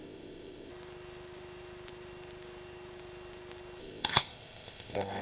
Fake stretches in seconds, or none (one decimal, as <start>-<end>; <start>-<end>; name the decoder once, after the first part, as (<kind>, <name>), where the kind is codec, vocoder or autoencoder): 0.0-0.7 (codec, ZipCodec); 3.8-5.2